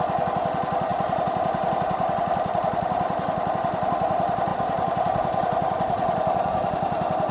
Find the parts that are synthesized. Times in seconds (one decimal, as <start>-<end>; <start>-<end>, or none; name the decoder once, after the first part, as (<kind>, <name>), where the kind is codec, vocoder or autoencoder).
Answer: 0.9-3.5 (vocoder, BigVGAN v2); 4.5-7.3